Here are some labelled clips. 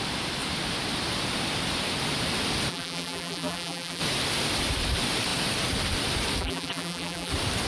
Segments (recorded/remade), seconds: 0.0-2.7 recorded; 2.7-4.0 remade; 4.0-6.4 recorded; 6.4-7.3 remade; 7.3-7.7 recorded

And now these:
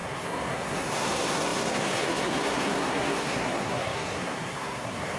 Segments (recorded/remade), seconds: 0.0-5.2 remade

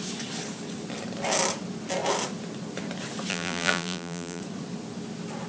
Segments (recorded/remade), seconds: 0.0-3.3 recorded; 3.3-4.4 remade; 4.4-5.5 recorded

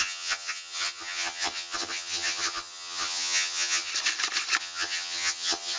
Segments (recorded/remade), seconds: 0.0-3.9 remade; 3.9-4.6 recorded; 4.6-5.8 remade

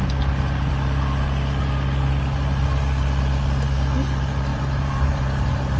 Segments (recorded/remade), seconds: 0.0-4.5 recorded; 4.5-5.8 remade

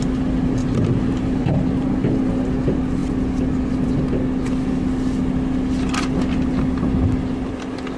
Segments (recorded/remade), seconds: 0.0-0.6 recorded; 0.6-2.2 remade; 2.2-8.0 recorded